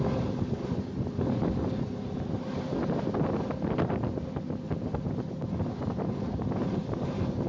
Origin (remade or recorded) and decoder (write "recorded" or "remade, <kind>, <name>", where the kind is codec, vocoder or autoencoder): recorded